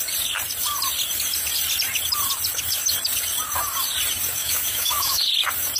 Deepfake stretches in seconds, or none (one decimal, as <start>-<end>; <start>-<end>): 4.4-5.2